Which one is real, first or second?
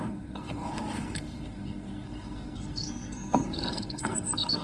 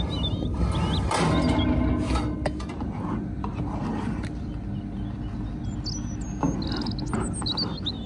second